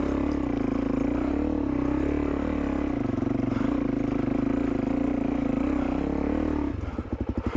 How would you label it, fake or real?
real